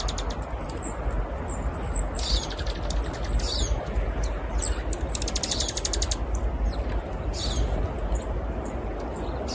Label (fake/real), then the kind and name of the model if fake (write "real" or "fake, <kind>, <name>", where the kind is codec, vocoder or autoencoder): real